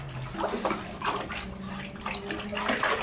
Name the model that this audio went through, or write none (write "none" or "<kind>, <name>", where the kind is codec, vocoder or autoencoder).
none